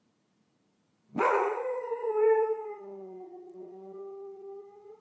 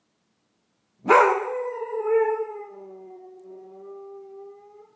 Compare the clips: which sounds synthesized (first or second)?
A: first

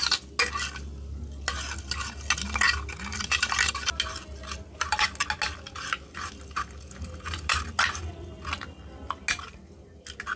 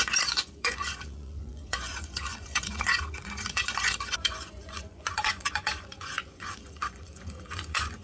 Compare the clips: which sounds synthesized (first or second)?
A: second